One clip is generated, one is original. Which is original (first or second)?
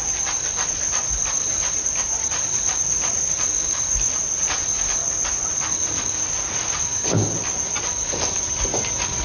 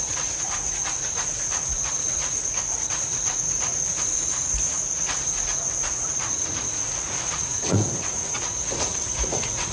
first